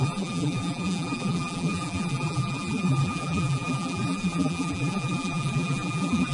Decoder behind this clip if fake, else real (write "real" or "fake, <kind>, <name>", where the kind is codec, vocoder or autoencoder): fake, vocoder, BigVGAN v2